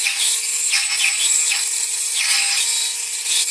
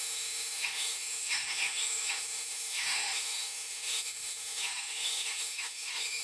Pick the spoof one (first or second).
second